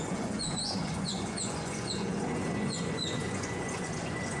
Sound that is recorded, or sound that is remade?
remade